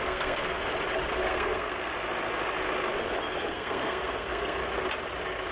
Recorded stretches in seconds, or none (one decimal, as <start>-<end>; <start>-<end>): 0.6-1.2; 1.9-3.3; 4.6-5.5